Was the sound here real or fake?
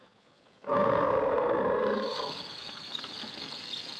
real